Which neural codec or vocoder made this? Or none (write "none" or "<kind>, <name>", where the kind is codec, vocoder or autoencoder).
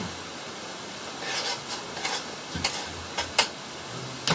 none